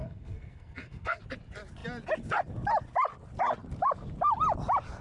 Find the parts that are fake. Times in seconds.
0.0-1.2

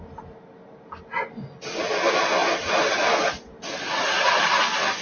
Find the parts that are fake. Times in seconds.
none

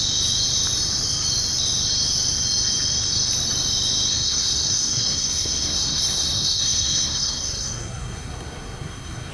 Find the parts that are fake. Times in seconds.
4.1-9.3

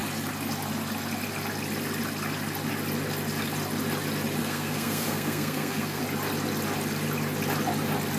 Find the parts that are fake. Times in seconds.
4.4-6.0

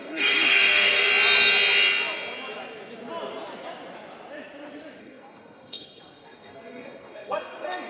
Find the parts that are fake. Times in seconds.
0.0-1.1; 5.0-7.9

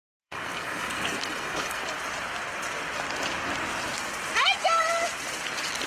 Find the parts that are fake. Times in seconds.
0.0-1.8